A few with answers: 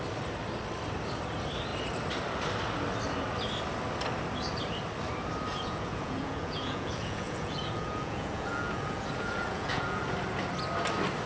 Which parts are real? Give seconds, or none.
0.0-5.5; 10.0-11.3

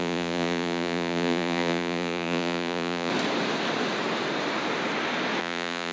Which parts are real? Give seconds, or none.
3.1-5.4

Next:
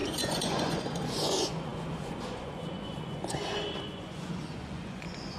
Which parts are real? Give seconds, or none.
none